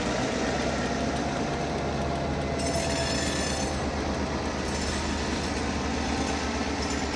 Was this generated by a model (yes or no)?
no